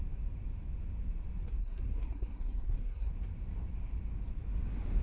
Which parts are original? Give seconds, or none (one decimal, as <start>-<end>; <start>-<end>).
0.0-1.6; 3.1-5.0